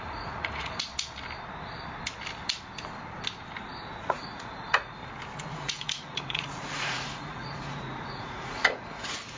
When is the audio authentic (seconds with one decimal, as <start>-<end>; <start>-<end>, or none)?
0.9-4.0; 5.0-5.5

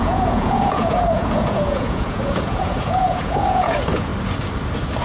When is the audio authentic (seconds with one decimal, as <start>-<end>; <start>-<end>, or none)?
4.1-5.0

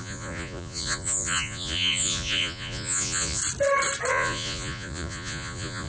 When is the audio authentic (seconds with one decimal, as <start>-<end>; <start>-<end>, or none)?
3.4-4.1

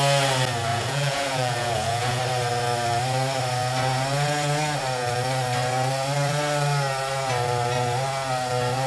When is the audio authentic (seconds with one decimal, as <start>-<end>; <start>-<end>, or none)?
0.0-0.7; 2.2-8.9

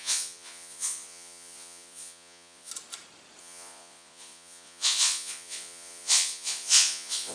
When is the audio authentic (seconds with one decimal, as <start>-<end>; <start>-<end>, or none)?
2.7-3.4